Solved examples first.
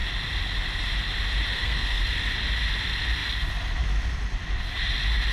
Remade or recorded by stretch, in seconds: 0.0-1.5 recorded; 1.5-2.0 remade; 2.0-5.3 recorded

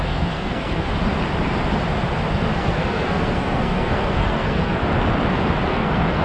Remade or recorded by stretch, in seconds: 0.0-0.9 remade; 0.9-2.3 recorded; 2.3-4.8 remade; 4.8-5.7 recorded; 5.7-6.2 remade

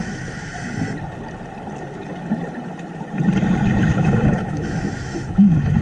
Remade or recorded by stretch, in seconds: 0.0-0.5 remade; 0.5-4.0 recorded; 4.0-5.8 remade

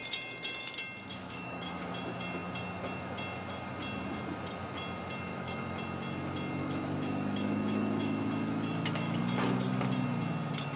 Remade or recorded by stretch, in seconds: 0.0-1.1 recorded; 1.1-1.8 remade; 1.8-5.3 recorded; 5.3-5.8 remade; 5.8-6.6 recorded; 6.6-9.2 remade; 9.2-10.8 recorded

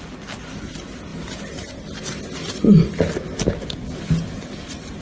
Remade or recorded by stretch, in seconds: 0.0-5.0 recorded

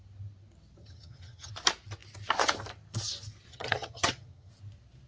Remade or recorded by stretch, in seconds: 0.0-0.8 recorded; 0.8-1.5 remade; 1.5-3.5 recorded; 3.5-4.5 remade; 4.5-5.1 recorded